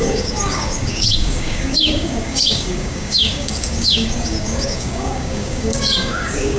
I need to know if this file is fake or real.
fake